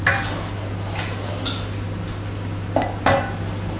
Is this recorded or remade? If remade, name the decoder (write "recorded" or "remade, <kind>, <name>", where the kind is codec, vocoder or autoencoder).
recorded